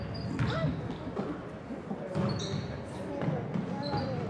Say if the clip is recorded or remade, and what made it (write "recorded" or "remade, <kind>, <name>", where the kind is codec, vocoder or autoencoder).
recorded